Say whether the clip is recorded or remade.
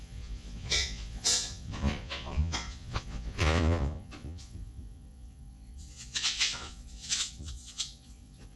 remade